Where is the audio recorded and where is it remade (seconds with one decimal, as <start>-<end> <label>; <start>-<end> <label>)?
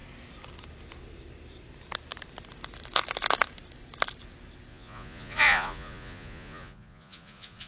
0.0-4.7 recorded; 4.7-7.7 remade